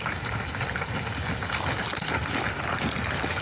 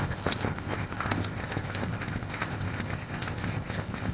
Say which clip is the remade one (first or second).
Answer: second